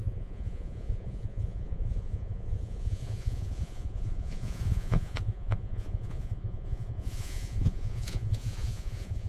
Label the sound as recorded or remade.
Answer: remade